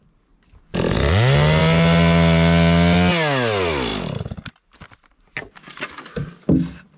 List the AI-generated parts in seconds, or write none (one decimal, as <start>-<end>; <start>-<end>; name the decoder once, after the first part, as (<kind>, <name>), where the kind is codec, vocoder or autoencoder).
none